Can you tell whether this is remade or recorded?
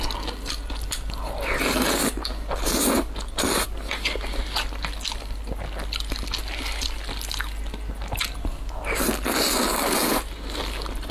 recorded